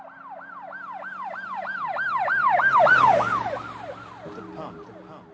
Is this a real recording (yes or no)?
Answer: yes